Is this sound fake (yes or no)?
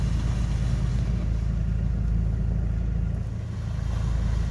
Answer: no